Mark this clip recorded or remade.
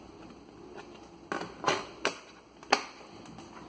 recorded